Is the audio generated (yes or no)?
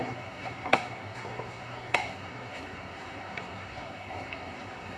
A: yes